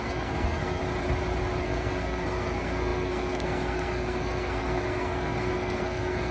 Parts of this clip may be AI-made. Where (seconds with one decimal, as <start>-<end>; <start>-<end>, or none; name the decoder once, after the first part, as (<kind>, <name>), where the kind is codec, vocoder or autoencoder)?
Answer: 0.0-0.8 (codec, SNAC); 1.6-6.3